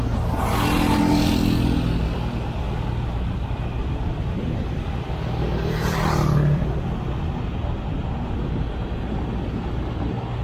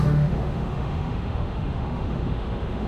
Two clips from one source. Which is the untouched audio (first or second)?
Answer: first